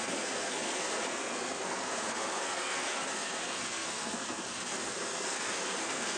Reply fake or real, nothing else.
fake